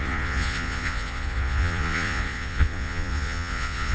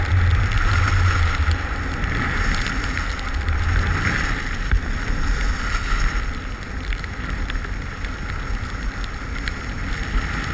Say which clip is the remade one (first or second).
first